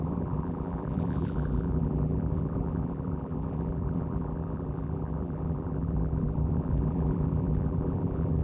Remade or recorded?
remade